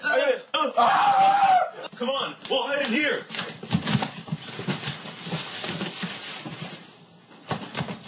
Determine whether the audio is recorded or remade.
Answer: remade